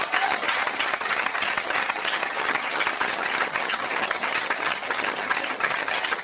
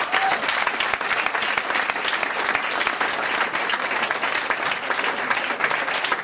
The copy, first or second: first